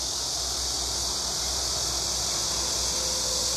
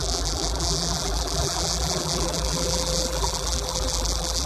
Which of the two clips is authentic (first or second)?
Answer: first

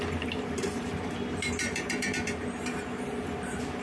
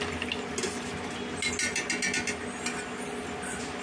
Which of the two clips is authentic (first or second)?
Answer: second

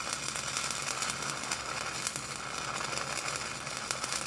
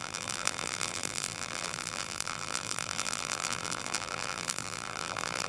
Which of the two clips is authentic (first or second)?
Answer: first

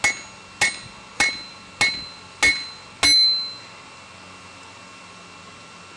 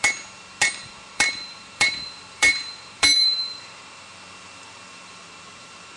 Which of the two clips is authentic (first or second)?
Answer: first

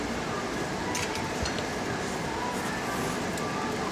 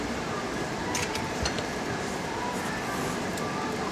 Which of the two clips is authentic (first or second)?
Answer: first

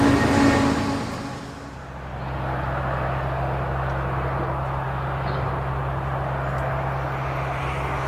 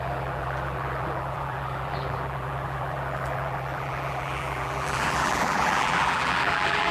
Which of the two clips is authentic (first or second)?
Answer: first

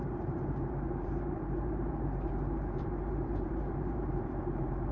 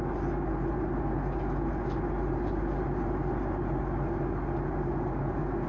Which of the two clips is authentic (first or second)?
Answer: second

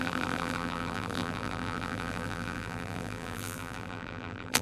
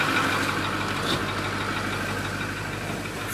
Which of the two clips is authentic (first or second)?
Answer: second